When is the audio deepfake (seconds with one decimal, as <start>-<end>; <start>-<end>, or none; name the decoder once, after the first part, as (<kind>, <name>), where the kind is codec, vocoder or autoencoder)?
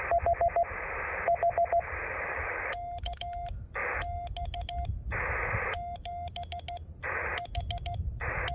none